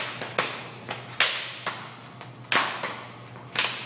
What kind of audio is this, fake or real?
real